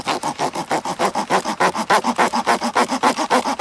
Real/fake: real